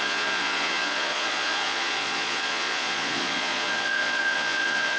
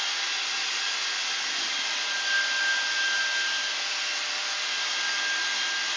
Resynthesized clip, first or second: first